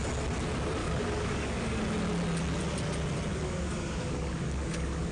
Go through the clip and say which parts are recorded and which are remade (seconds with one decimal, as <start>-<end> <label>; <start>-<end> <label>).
0.0-0.8 recorded; 0.8-1.8 remade; 1.8-3.3 recorded; 3.3-5.1 remade